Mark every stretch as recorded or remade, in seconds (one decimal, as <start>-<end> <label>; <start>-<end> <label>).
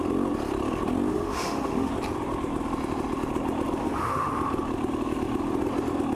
0.0-1.1 recorded; 1.1-1.9 remade; 1.9-3.8 recorded; 3.8-4.3 remade; 4.3-6.2 recorded